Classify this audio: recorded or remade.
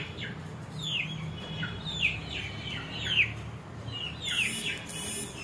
recorded